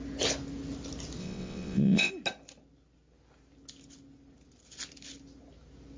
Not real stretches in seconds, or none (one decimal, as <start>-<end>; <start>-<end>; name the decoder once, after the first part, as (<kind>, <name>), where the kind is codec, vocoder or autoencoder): 1.2-2.1 (vocoder, WaveNeXt)